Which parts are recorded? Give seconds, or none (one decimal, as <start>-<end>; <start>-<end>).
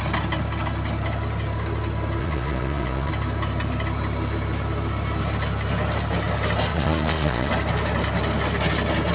0.0-2.2; 3.1-6.7; 7.5-9.1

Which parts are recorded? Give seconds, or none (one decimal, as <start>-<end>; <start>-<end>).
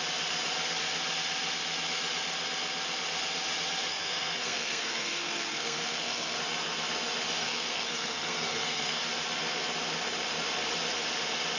0.0-3.9; 6.4-7.4; 9.1-11.6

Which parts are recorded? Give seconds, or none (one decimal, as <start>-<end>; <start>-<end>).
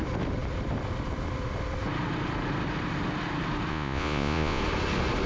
0.0-3.7; 4.6-5.3